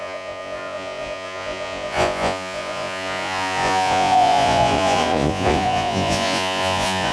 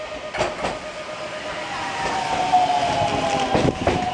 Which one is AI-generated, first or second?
first